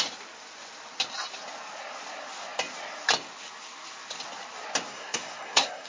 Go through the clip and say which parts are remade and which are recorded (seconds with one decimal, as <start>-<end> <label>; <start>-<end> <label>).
0.0-4.9 recorded; 4.9-5.9 remade